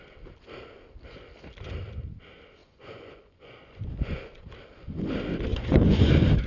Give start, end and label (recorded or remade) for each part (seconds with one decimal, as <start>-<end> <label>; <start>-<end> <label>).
0.0-2.6 recorded; 2.6-4.4 remade; 4.4-5.5 recorded; 5.5-6.1 remade; 6.1-6.5 recorded